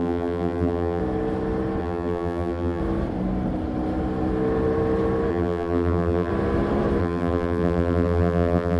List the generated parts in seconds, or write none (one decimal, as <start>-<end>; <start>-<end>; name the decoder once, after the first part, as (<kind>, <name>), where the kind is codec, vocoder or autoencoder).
0.0-1.0 (vocoder, BigVGAN v2); 1.8-2.8; 5.3-6.3; 7.0-8.8